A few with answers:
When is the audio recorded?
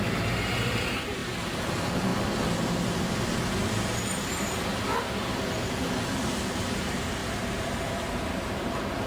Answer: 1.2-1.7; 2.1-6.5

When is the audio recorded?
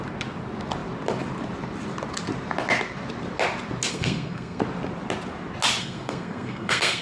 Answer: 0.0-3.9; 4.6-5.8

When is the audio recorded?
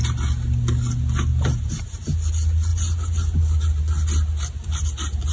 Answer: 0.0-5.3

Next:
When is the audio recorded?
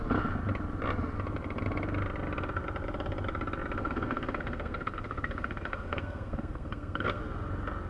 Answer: 0.0-3.8; 7.2-7.9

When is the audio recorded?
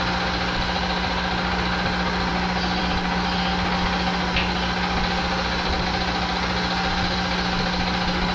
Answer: 0.0-8.3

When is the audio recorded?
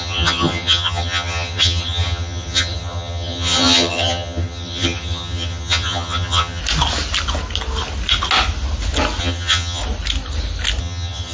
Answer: 6.6-9.2; 9.8-10.8